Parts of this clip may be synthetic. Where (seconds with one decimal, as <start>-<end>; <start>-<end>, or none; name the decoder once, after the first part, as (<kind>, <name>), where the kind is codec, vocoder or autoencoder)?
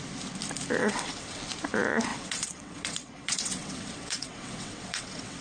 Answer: 0.8-1.4 (vocoder, WaveNeXt); 2.1-5.4